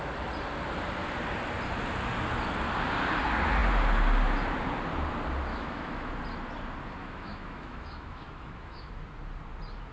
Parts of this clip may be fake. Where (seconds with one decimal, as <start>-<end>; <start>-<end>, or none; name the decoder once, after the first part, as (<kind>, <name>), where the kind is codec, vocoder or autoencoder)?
5.5-6.1 (autoencoder, DAC-VAE); 7.0-8.9